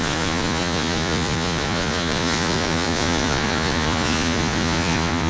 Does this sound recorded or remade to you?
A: remade